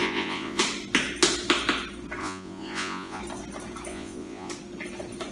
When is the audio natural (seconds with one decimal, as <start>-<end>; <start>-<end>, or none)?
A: 0.6-2.2; 3.2-3.9; 4.5-5.3